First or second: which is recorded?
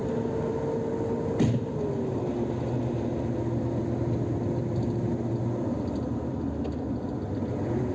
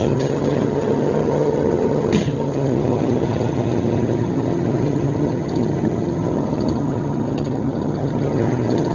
first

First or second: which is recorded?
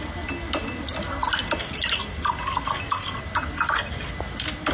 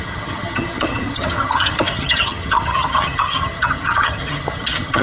first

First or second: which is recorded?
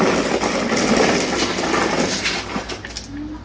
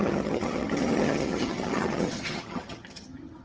first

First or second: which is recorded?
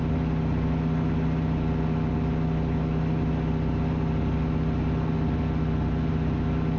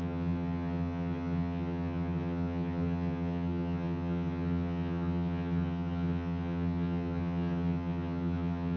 first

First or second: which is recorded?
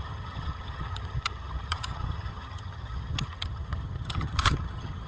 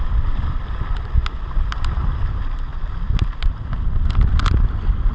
second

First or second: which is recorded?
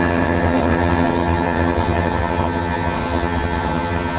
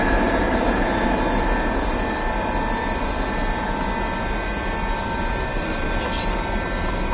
second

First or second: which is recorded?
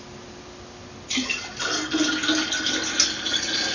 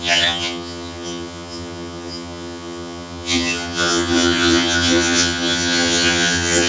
first